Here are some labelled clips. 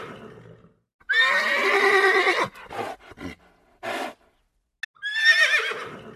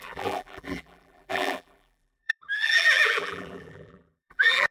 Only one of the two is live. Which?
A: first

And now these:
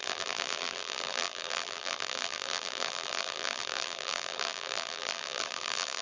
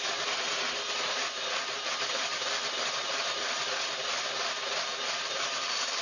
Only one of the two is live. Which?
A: second